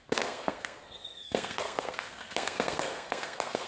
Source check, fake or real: fake